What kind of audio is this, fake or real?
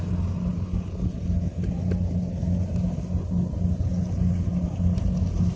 real